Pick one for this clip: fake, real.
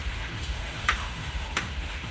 fake